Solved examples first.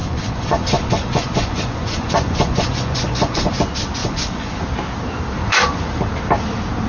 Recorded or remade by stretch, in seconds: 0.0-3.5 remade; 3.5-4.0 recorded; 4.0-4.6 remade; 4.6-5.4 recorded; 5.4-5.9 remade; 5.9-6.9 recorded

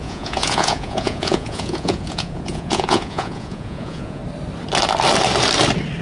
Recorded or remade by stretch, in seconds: 0.0-4.2 remade; 4.2-6.0 recorded

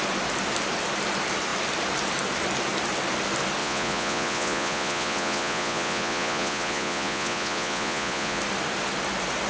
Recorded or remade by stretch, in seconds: 0.0-3.6 recorded; 3.6-8.4 remade; 8.4-9.5 recorded

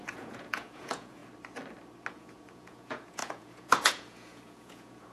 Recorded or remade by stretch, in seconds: 0.0-1.2 remade; 1.2-2.1 recorded; 2.1-5.1 remade

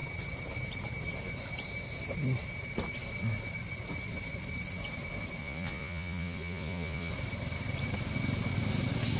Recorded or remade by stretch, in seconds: 0.0-5.4 recorded; 5.4-7.1 remade; 7.1-9.2 recorded

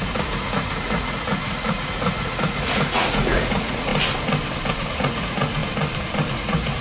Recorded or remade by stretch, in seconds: 0.0-3.9 remade; 3.9-4.7 recorded; 4.7-5.6 remade; 5.6-6.3 recorded; 6.3-6.8 remade

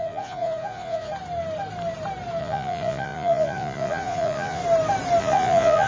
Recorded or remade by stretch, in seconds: 0.0-1.1 remade; 1.1-2.4 recorded; 2.4-4.6 remade; 4.6-5.2 recorded; 5.2-5.9 remade

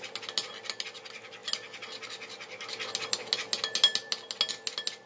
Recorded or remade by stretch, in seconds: 0.0-5.1 recorded